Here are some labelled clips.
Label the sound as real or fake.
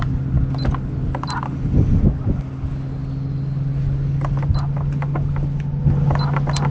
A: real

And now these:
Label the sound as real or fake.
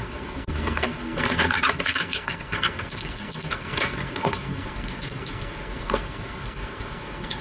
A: fake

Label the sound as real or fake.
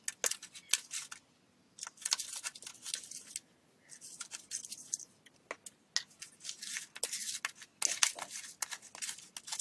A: real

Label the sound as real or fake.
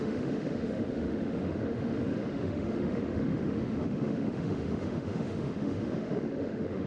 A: fake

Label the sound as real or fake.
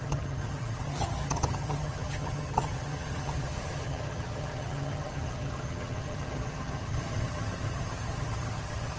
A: fake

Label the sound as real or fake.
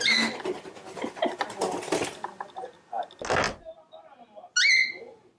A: real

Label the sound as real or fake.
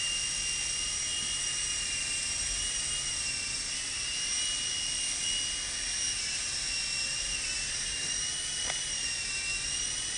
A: real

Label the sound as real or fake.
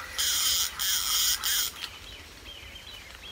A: real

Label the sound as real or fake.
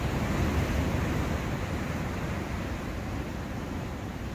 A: real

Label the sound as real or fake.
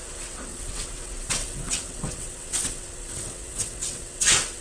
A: fake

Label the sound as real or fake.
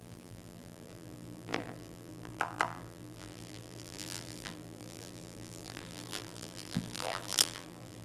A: fake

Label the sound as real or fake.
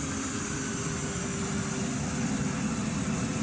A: real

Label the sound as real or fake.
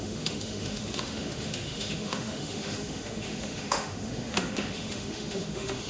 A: fake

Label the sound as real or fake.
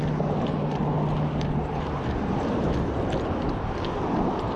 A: real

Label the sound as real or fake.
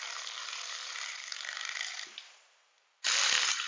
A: fake